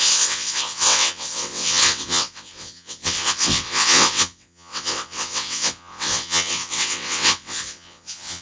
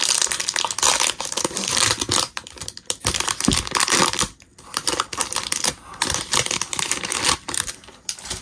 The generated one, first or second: first